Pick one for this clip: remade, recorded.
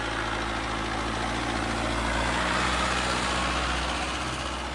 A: recorded